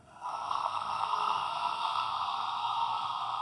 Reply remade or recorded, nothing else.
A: remade